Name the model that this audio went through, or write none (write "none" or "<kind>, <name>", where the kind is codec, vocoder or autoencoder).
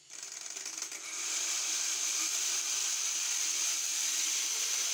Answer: none